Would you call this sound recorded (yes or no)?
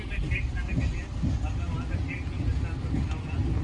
yes